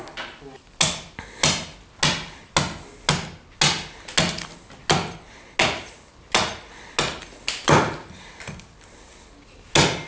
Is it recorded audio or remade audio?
recorded